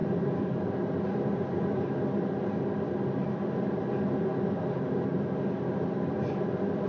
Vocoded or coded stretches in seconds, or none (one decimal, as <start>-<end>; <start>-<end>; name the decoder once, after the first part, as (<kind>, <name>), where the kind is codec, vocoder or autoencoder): none